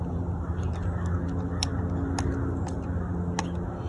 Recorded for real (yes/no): yes